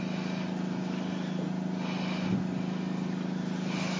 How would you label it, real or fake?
real